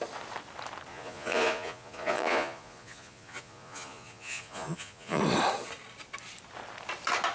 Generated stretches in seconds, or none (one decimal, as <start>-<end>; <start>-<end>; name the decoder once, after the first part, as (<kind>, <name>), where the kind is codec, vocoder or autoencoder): 0.9-5.2 (vocoder, Vocos)